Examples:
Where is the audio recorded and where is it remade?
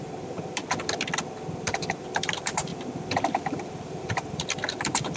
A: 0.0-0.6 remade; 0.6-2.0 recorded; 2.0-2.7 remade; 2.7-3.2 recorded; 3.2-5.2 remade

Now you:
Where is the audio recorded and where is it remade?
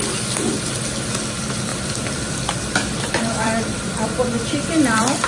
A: 0.0-1.7 recorded; 1.7-5.3 remade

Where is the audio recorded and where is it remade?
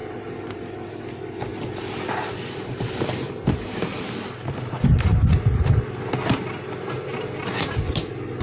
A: 0.0-1.0 remade; 1.0-1.5 recorded; 1.5-4.1 remade; 4.1-8.4 recorded